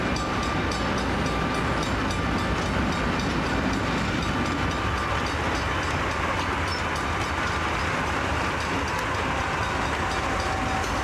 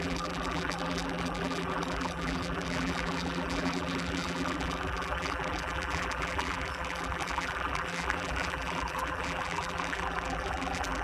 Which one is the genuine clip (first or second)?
first